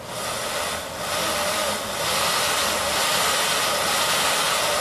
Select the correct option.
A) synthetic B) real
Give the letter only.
B